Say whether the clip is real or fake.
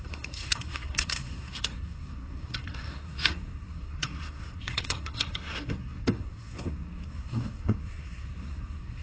fake